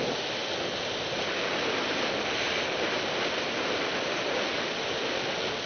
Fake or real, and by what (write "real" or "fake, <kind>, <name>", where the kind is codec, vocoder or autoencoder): real